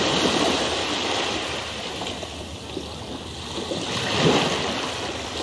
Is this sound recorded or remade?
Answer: recorded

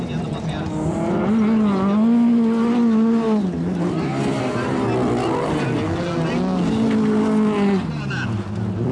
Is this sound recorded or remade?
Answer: recorded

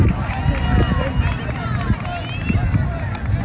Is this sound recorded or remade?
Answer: recorded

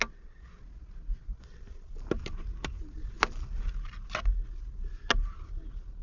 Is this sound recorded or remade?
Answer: recorded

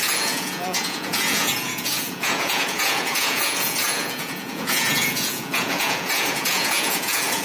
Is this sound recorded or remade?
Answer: remade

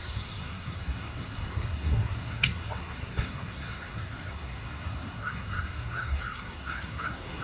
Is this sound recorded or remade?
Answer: remade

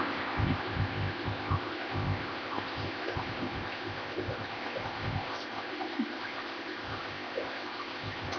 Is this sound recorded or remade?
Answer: remade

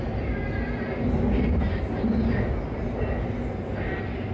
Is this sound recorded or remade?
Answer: recorded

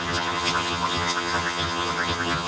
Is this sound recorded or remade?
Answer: remade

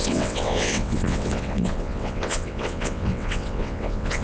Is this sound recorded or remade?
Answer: remade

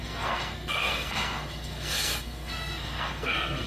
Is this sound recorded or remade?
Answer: remade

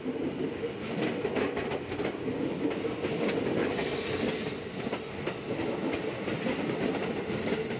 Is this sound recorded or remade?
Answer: recorded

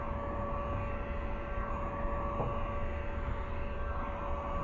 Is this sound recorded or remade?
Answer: recorded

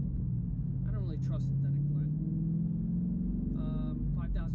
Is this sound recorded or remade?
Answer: recorded